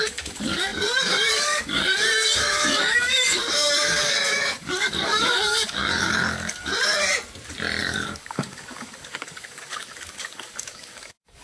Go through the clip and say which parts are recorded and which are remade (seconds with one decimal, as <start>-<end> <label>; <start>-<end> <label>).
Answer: 0.0-6.7 remade; 6.7-7.8 recorded; 7.8-11.4 remade

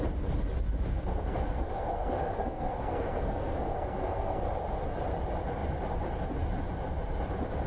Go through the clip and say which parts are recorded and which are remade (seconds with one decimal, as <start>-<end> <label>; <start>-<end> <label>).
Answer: 0.0-0.9 recorded; 0.9-4.4 remade; 4.4-7.7 recorded

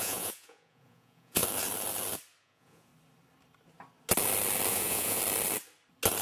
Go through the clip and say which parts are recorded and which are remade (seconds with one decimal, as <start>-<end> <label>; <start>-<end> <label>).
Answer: 0.0-1.4 remade; 1.4-2.4 recorded; 2.4-2.9 remade; 2.9-4.7 recorded; 4.7-5.2 remade; 5.2-6.2 recorded

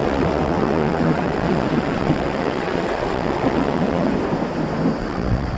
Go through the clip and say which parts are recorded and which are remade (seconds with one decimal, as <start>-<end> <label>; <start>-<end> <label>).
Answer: 0.0-4.1 remade; 4.1-5.0 recorded; 5.0-5.6 remade